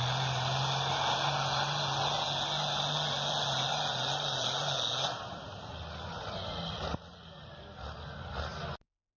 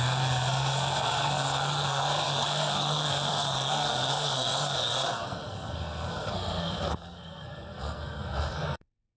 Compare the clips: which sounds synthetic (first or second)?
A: second